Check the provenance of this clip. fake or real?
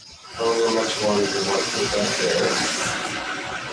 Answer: real